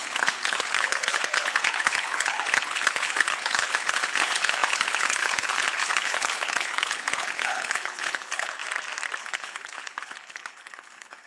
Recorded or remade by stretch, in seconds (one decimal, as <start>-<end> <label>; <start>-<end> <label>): 0.0-8.6 remade; 8.6-9.2 recorded; 9.2-11.3 remade

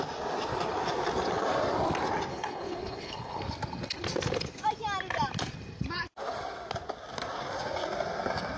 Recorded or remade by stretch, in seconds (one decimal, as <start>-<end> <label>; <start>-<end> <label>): 0.0-2.3 recorded; 2.3-3.4 remade; 3.4-8.6 recorded